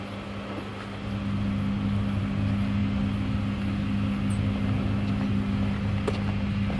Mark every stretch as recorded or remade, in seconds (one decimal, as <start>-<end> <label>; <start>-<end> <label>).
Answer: 0.0-6.8 recorded